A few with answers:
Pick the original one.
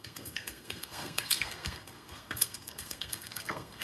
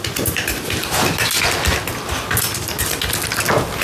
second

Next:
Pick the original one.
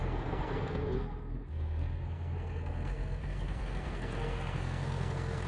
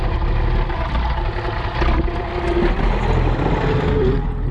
second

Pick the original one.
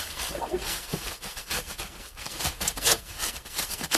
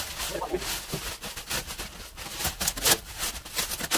second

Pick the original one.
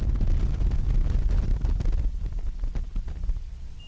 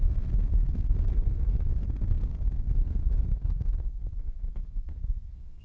first